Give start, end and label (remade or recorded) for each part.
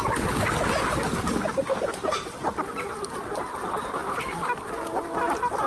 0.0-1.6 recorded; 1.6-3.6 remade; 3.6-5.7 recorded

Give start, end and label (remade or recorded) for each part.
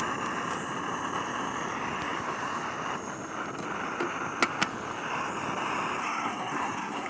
0.0-6.0 recorded; 6.0-7.1 remade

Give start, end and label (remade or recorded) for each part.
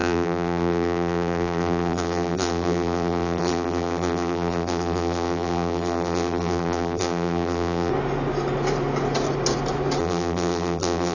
0.0-7.9 remade; 7.9-10.0 recorded; 10.0-11.1 remade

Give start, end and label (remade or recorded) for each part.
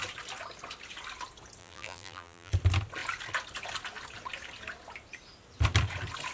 0.0-1.6 recorded; 1.6-2.5 remade; 2.5-6.3 recorded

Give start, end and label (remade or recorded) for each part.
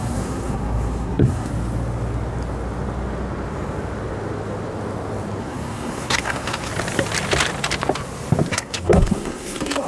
0.0-1.5 remade; 1.5-5.4 recorded; 5.4-6.7 remade; 6.7-8.5 recorded; 8.5-9.9 remade